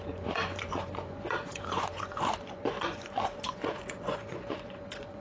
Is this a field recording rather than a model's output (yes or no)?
no